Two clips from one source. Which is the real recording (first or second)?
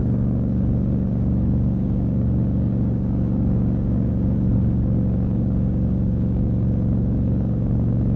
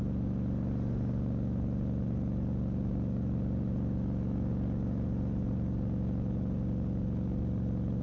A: second